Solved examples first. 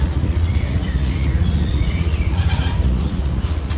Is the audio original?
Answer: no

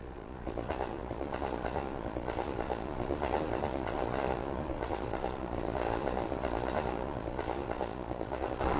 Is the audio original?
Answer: no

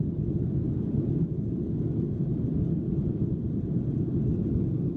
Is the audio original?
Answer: yes